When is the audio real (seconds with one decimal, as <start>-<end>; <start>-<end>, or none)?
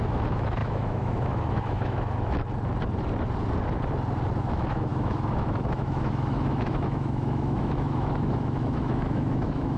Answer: 2.4-4.4